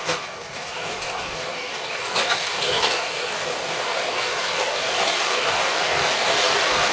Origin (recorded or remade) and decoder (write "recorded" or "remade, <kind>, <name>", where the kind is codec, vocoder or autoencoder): remade, codec, DAC